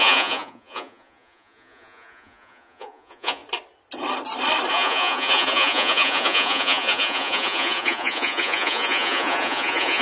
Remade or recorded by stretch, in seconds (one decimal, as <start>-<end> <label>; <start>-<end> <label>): 0.0-3.4 remade; 3.4-4.7 recorded; 4.7-10.0 remade